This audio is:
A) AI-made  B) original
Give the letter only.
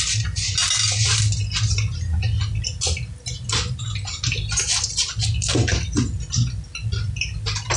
B